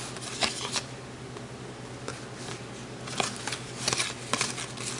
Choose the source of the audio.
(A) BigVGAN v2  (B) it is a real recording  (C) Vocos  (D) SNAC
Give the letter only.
B